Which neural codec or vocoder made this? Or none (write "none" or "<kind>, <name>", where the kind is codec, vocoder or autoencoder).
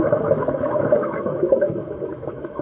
autoencoder, DAC-VAE